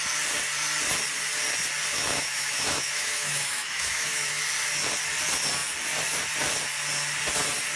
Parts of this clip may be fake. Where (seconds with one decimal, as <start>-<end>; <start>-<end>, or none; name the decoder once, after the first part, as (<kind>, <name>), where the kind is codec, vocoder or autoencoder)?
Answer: 1.9-4.4 (autoencoder, DAC-VAE)